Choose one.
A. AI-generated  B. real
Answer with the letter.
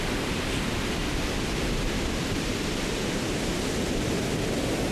B